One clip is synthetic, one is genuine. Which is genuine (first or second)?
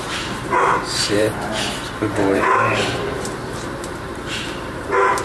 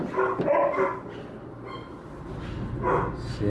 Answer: second